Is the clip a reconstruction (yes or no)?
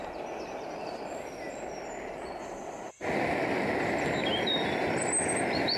no